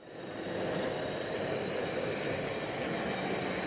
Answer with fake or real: real